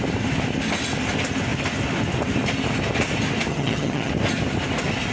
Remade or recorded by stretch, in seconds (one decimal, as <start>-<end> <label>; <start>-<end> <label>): 0.0-3.5 recorded; 3.5-4.1 remade; 4.1-5.1 recorded

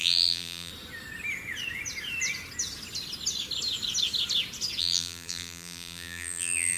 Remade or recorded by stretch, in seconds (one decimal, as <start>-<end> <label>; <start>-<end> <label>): 0.0-0.7 remade; 0.7-4.8 recorded; 4.8-6.8 remade